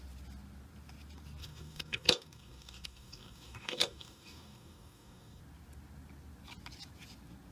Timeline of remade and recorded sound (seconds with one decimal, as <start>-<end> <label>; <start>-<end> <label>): 0.0-1.4 recorded; 1.4-5.4 remade; 5.4-7.5 recorded